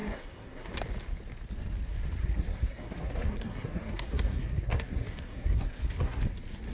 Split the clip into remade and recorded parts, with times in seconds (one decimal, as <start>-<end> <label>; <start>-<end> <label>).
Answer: 0.0-0.7 remade; 0.7-2.2 recorded; 2.2-6.2 remade; 6.2-6.7 recorded